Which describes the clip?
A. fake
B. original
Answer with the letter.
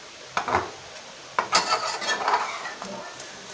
B